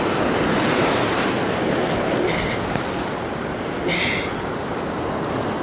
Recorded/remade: recorded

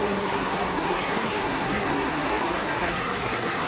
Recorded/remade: remade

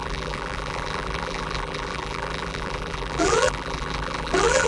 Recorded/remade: remade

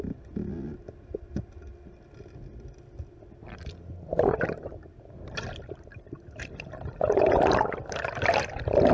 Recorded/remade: recorded